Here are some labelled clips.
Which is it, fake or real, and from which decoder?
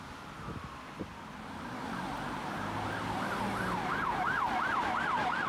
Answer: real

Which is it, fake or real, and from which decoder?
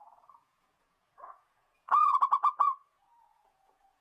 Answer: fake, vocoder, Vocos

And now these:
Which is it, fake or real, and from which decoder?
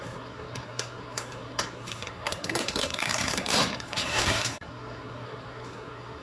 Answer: fake, codec, SNAC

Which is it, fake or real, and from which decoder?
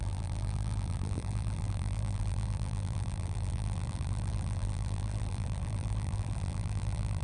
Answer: fake, vocoder, BigVGAN v2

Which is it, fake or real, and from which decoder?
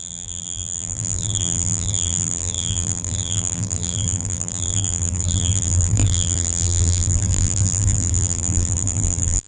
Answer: fake, vocoder, BigVGAN v2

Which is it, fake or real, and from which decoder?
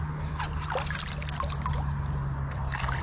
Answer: real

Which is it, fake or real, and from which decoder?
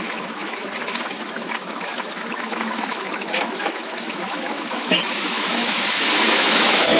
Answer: fake, autoencoder, DAC-VAE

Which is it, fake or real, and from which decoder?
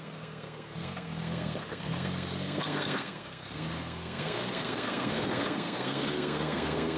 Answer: fake, codec, SNAC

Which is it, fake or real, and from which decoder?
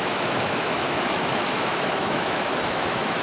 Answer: fake, autoencoder, DAC-VAE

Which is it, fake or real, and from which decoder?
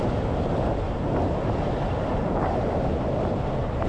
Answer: fake, vocoder, BigVGAN v2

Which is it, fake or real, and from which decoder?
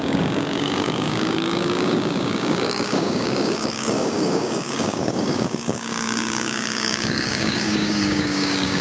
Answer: fake, codec, DAC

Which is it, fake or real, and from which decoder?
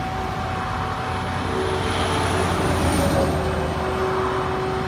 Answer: real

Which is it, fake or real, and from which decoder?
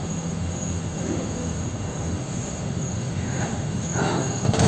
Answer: fake, autoencoder, DAC-VAE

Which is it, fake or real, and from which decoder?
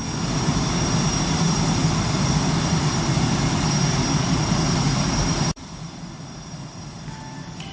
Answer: real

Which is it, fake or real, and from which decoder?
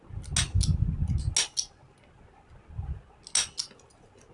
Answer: real